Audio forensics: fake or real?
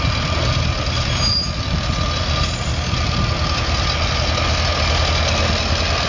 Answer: real